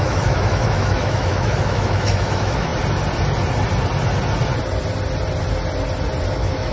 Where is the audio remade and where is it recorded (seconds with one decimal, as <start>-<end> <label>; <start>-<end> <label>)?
0.0-2.7 remade; 2.7-6.3 recorded; 6.3-6.7 remade